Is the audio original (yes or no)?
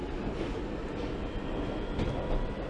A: no